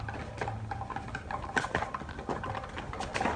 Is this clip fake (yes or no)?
no